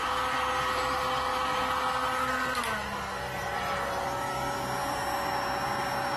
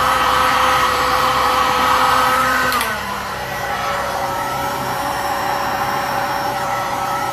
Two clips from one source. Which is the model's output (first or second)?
second